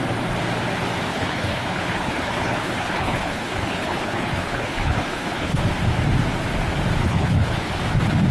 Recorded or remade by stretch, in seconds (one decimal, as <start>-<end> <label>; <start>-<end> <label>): 0.0-1.1 recorded; 1.1-5.6 remade; 5.6-7.0 recorded; 7.0-7.8 remade; 7.8-8.3 recorded